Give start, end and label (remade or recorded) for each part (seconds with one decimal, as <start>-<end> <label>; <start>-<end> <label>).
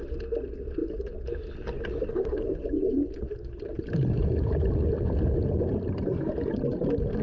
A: 0.0-7.2 recorded